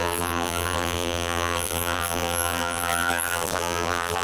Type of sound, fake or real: fake